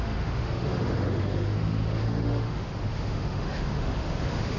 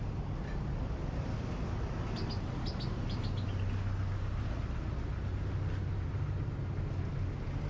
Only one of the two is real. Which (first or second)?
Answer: second